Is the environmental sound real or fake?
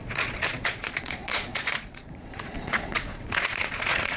fake